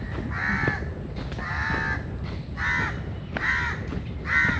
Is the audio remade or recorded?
recorded